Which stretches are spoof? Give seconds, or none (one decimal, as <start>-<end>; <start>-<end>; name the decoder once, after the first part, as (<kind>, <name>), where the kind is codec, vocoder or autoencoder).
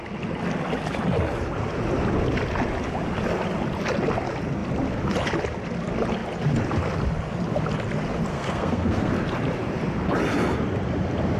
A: 8.3-9.1 (codec, SNAC)